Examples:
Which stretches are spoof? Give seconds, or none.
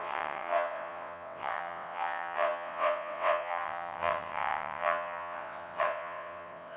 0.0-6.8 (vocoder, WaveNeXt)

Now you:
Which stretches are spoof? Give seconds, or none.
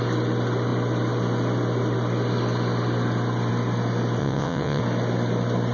4.2-4.8 (vocoder, WaveNeXt)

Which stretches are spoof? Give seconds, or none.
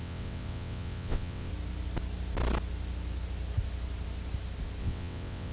0.0-1.5 (vocoder, WaveNeXt); 4.8-5.5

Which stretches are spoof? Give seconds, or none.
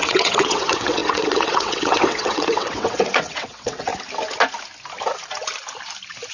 0.0-3.9 (vocoder, WaveNeXt)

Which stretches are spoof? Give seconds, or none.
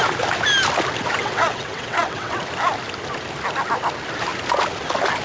1.2-2.4 (vocoder, WaveNeXt)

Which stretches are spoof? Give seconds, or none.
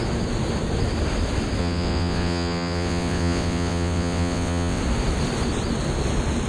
1.6-4.8 (vocoder, WaveNeXt)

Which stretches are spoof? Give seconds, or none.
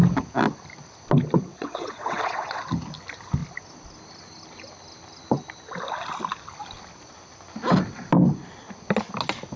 1.5-2.6 (vocoder, WaveNeXt)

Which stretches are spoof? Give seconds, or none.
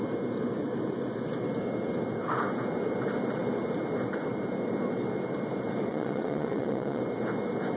5.9-7.0 (vocoder, WaveNeXt)